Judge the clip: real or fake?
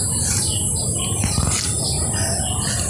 real